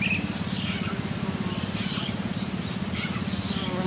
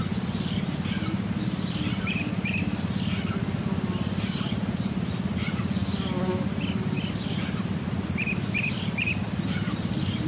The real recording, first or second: first